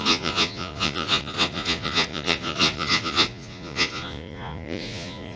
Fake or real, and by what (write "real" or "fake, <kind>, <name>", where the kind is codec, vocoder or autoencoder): fake, vocoder, Vocos